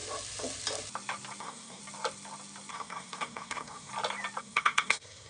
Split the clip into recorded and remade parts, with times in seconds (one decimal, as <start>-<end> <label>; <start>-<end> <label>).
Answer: 0.0-1.4 recorded; 1.4-1.8 remade; 1.8-2.7 recorded; 2.7-3.9 remade; 3.9-4.4 recorded; 4.4-5.3 remade